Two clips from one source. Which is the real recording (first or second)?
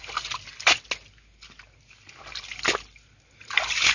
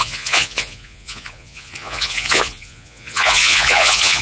first